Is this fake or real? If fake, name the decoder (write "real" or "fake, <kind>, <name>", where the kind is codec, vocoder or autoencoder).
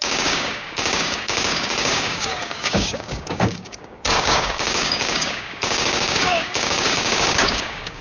fake, codec, DAC